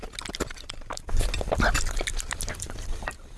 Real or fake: real